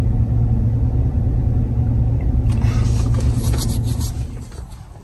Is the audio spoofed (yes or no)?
no